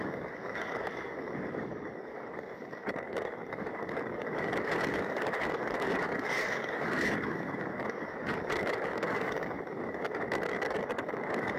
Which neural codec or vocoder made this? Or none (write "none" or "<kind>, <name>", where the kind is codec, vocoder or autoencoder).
codec, DAC